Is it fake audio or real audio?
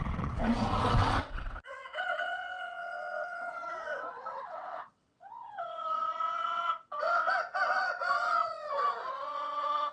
fake